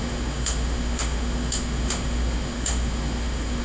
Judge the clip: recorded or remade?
remade